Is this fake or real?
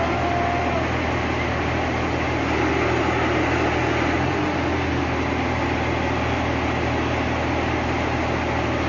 real